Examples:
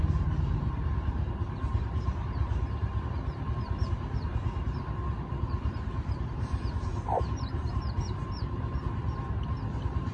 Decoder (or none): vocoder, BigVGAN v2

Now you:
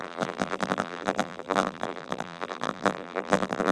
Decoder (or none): vocoder, BigVGAN v2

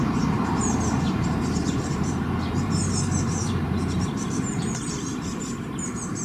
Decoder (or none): vocoder, BigVGAN v2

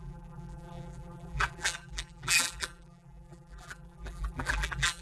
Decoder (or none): vocoder, BigVGAN v2